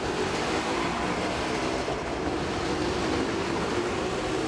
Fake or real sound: real